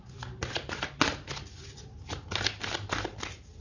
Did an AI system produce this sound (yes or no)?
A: no